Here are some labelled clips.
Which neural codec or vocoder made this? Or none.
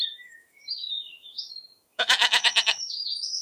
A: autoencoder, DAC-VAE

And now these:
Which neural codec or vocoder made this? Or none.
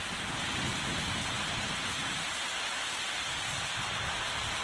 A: none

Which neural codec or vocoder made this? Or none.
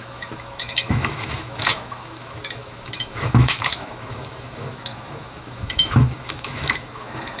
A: autoencoder, DAC-VAE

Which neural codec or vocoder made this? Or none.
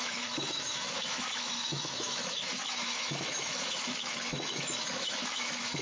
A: autoencoder, DAC-VAE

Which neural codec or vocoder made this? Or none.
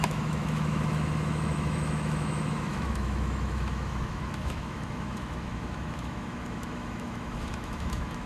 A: autoencoder, DAC-VAE